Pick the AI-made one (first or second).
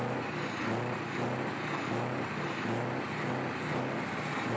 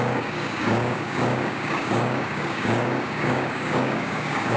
second